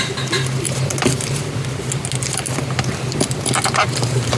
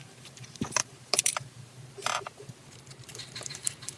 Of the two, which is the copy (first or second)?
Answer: second